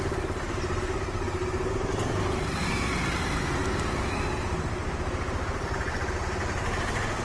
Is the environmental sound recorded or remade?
recorded